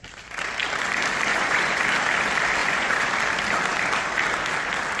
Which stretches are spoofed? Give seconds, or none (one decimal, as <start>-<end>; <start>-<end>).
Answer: 1.3-1.8; 2.6-3.1